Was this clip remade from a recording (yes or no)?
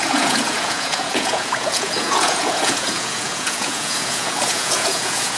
yes